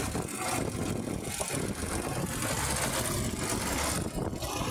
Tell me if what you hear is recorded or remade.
recorded